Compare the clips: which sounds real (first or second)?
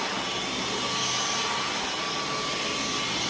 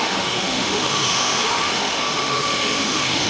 first